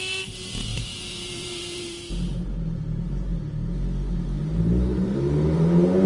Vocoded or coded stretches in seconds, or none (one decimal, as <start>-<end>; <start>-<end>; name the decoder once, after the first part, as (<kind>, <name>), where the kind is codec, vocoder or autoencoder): 0.7-3.0 (vocoder, BigVGAN v2); 4.4-5.2